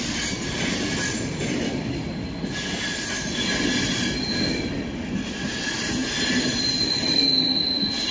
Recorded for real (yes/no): yes